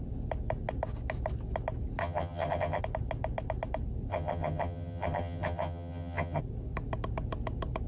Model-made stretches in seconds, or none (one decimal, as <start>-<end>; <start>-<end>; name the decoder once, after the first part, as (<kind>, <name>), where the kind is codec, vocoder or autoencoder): 2.0-2.8 (vocoder, HiFi-GAN); 4.1-6.4